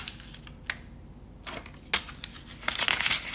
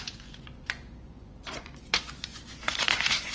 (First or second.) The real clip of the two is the first